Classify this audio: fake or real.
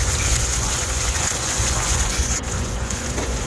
fake